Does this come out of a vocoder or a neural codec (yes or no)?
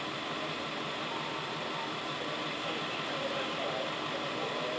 yes